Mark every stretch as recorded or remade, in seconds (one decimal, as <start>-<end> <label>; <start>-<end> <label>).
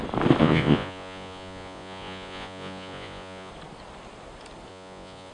0.0-0.4 recorded; 0.4-3.5 remade; 3.5-4.7 recorded; 4.7-5.3 remade